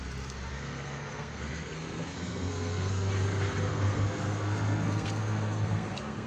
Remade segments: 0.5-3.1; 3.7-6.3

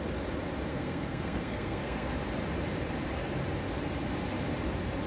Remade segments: 0.7-2.1

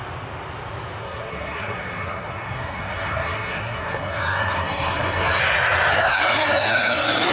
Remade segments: 1.0-5.4; 5.9-7.3

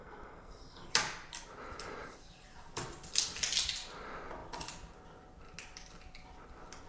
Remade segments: 0.0-0.9